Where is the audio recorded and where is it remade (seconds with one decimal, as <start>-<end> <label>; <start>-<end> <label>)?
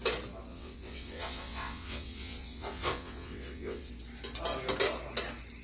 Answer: 0.0-0.5 recorded; 0.5-3.9 remade; 3.9-5.6 recorded